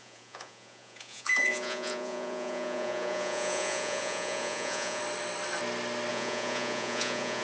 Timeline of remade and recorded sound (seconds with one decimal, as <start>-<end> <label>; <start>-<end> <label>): 0.0-5.0 remade; 5.0-6.1 recorded; 6.1-7.4 remade